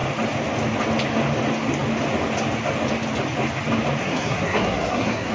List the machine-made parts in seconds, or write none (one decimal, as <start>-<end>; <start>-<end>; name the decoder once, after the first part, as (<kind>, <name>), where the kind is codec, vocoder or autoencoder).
4.0-5.3 (codec, SNAC)